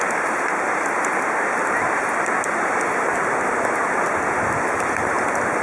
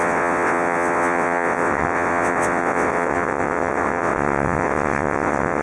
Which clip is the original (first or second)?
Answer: first